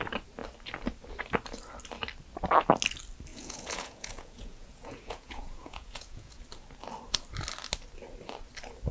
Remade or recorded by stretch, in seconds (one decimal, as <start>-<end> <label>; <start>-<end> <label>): 0.0-3.3 recorded; 3.3-6.4 remade; 6.4-8.9 recorded

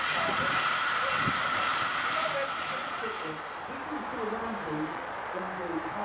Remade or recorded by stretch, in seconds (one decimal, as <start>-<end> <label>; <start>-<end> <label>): 0.0-4.9 recorded; 4.9-5.4 remade; 5.4-6.0 recorded

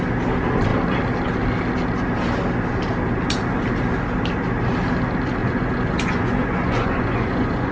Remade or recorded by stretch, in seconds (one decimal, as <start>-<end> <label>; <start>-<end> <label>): 0.0-5.4 recorded; 5.4-7.7 remade

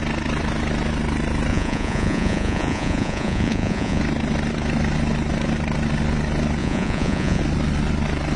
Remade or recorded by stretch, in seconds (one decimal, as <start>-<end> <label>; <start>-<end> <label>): 0.0-1.5 recorded; 1.5-4.0 remade; 4.0-6.6 recorded; 6.6-7.4 remade; 7.4-8.4 recorded